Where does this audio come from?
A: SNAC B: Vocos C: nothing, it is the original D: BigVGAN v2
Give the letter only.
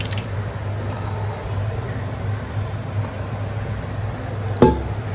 C